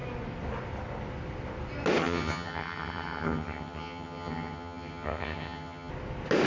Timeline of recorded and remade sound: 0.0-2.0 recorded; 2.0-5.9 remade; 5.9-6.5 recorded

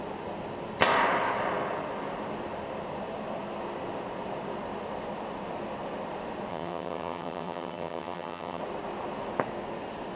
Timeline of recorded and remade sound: 0.0-6.5 recorded; 6.5-8.6 remade; 8.6-10.2 recorded

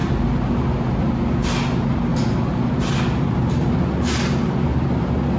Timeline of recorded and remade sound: 0.0-5.4 recorded

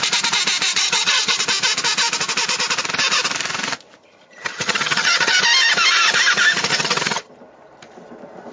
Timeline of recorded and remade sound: 0.0-0.7 recorded; 0.7-1.4 remade; 1.4-4.0 recorded; 4.0-5.4 remade; 5.4-6.7 recorded; 6.7-7.3 remade; 7.3-8.5 recorded

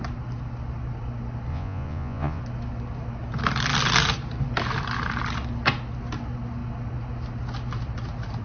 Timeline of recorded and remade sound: 0.0-1.5 recorded; 1.5-2.4 remade; 2.4-8.4 recorded

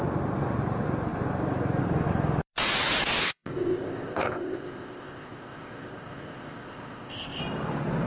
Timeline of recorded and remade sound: 0.0-3.2 recorded; 3.2-7.4 remade; 7.4-8.1 recorded

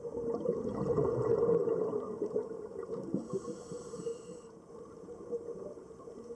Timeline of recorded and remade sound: 0.0-4.1 remade; 4.1-4.7 recorded; 4.7-6.3 remade

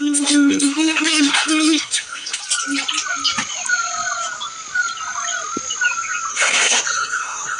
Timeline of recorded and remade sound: 0.0-2.4 remade; 2.4-6.3 recorded; 6.3-7.6 remade